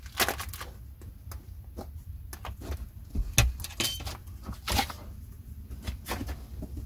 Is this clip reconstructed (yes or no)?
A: no